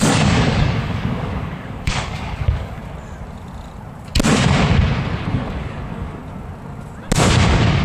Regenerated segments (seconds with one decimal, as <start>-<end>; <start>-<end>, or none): 0.0-2.8; 5.3-6.2